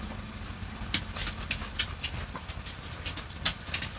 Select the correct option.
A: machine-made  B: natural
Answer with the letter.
B